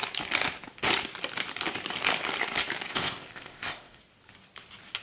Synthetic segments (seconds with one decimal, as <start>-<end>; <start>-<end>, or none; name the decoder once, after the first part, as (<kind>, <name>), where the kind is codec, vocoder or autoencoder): 2.9-4.0 (codec, ZipCodec)